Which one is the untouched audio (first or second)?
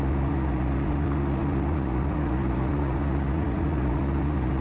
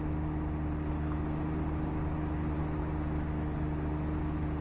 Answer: second